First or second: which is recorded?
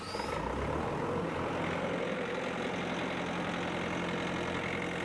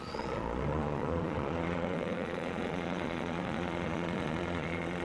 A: first